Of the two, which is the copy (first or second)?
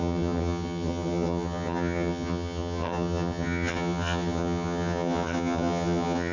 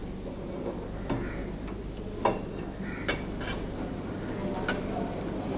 first